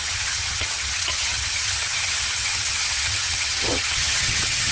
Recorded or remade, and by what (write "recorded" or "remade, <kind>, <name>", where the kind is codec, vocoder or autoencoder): remade, vocoder, HiFi-GAN